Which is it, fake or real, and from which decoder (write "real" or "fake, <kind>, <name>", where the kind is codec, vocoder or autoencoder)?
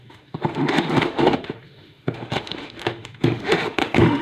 fake, autoencoder, DAC-VAE